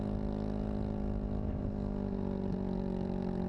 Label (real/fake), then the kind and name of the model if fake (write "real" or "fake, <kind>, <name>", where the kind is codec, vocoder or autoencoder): real